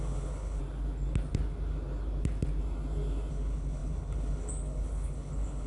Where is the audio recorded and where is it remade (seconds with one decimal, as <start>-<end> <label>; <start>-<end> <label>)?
0.0-0.6 remade; 0.6-3.3 recorded; 3.3-5.7 remade